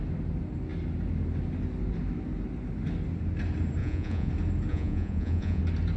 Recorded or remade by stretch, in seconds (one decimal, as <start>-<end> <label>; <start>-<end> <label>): 0.0-3.8 recorded; 3.8-4.3 remade; 4.3-4.7 recorded; 4.7-5.6 remade; 5.6-6.0 recorded